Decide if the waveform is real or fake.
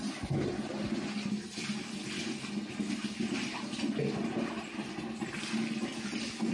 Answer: real